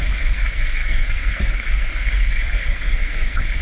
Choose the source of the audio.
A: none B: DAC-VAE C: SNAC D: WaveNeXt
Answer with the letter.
C